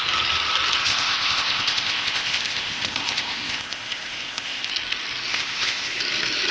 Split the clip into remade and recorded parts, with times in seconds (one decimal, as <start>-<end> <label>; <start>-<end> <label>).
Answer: 0.0-0.8 recorded; 0.8-4.7 remade; 4.7-5.3 recorded; 5.3-6.0 remade; 6.0-6.5 recorded